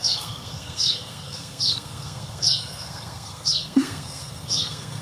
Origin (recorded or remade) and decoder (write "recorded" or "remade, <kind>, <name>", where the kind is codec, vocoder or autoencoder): remade, codec, SNAC